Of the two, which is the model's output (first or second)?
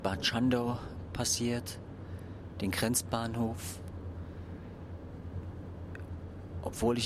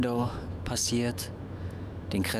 second